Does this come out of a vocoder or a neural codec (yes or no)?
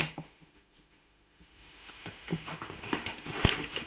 yes